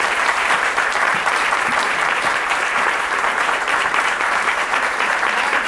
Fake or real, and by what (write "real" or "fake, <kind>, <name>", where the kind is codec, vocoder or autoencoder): fake, vocoder, BigVGAN v2